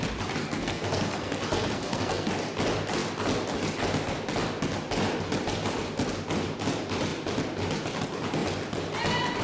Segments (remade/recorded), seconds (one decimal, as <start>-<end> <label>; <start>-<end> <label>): 0.0-0.4 recorded; 0.4-2.3 remade; 2.3-9.4 recorded